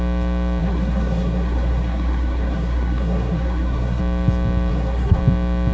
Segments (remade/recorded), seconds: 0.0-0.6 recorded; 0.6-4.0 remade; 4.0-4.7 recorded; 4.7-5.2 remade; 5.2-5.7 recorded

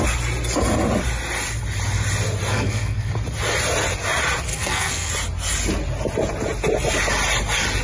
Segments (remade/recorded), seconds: 0.0-2.5 recorded; 2.5-3.1 remade; 3.1-4.5 recorded; 4.5-5.1 remade; 5.1-7.8 recorded

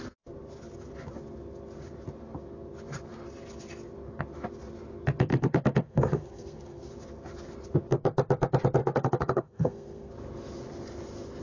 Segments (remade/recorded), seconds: 0.0-5.3 recorded; 5.3-6.9 remade; 6.9-8.8 recorded; 8.8-10.1 remade; 10.1-11.4 recorded

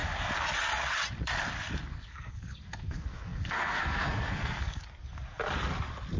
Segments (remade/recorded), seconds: 0.0-1.9 recorded; 1.9-4.8 remade; 4.8-6.2 recorded

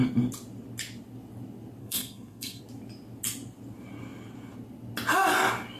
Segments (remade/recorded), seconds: 0.0-1.8 recorded; 1.8-2.6 remade; 2.6-5.8 recorded